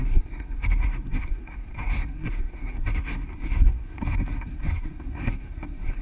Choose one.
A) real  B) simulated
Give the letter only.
B